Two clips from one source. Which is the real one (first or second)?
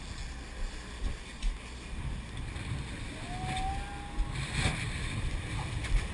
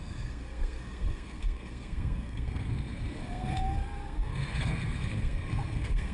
first